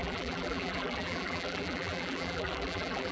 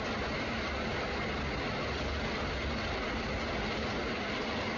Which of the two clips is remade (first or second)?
first